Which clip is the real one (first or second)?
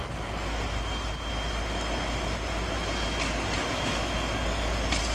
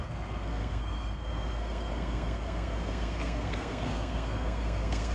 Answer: first